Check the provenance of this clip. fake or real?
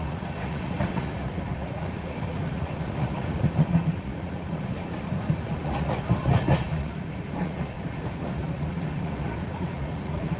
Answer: fake